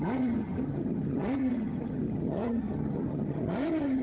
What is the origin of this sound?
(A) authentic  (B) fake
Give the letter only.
B